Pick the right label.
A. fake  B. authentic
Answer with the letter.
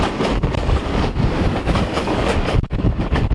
A